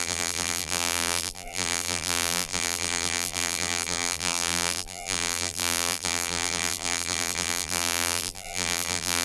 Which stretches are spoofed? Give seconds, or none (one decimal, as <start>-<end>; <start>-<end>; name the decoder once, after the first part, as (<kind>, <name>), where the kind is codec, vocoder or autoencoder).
0.0-9.2 (vocoder, BigVGAN v2)